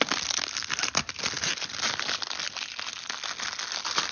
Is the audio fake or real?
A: real